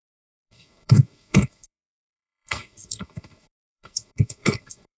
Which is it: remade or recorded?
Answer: remade